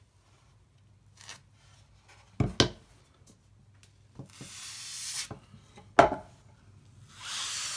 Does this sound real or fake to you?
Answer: real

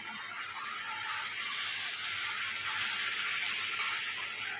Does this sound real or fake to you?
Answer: real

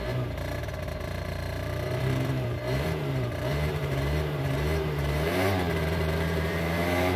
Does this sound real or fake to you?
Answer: fake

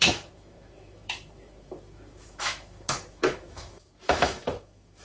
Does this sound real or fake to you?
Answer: fake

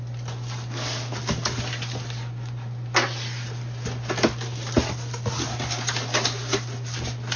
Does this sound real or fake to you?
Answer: real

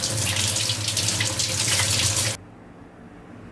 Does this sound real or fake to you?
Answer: real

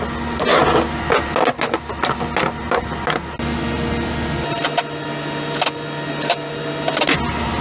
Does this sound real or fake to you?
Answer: real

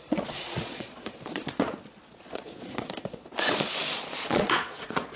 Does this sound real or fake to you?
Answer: fake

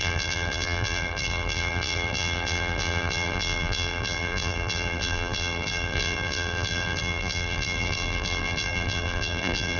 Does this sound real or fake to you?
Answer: fake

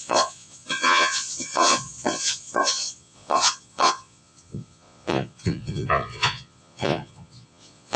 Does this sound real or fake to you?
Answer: fake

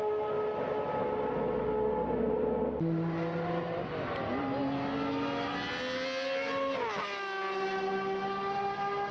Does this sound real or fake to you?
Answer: real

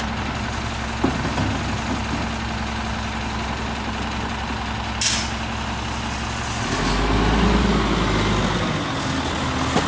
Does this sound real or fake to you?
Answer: real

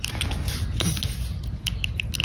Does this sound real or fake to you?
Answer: real